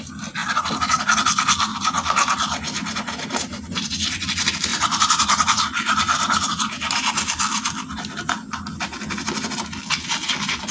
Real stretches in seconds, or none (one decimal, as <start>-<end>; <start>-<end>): 0.0-1.7; 4.2-4.7; 7.1-10.7